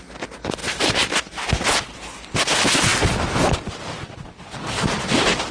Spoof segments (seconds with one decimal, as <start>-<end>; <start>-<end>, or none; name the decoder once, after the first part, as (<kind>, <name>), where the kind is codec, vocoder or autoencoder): 0.6-1.5 (vocoder, BigVGAN v2)